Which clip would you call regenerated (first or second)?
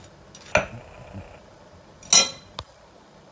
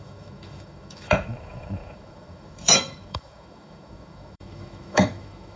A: second